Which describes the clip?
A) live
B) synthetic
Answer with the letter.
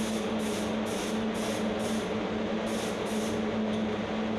A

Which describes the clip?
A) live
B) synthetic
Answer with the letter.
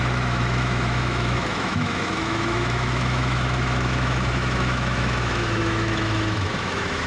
B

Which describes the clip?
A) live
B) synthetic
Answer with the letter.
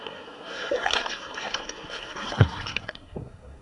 B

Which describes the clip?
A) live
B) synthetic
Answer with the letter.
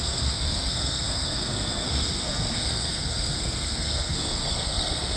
B